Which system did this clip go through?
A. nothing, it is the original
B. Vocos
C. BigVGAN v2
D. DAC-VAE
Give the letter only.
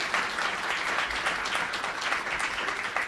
A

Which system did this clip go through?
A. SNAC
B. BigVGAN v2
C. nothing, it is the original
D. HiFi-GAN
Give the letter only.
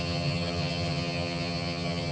D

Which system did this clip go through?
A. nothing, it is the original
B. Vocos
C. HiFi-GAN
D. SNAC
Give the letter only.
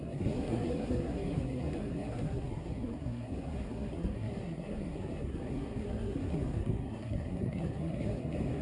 D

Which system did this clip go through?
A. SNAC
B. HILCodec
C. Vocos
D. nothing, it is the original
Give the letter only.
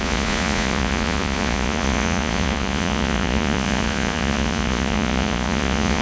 C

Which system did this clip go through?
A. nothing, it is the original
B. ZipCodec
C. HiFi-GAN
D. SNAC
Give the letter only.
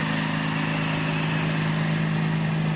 A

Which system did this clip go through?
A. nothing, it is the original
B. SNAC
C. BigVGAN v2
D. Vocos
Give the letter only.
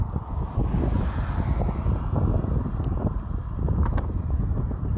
A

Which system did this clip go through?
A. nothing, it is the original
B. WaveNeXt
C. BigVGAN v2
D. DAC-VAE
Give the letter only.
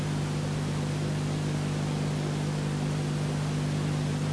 A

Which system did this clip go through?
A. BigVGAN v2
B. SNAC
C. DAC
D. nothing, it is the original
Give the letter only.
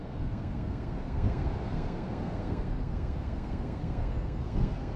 B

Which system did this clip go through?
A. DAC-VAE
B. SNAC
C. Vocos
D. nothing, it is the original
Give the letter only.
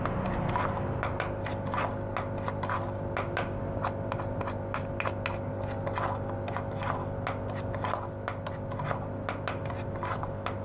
D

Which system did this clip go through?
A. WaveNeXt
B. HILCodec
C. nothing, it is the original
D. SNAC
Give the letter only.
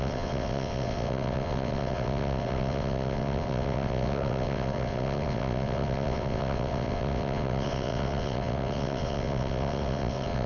A